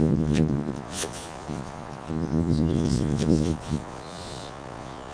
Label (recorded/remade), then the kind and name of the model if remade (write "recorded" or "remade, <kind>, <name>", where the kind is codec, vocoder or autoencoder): remade, vocoder, Vocos